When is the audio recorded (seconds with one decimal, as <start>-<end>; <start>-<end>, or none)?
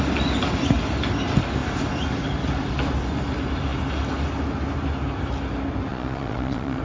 0.0-5.9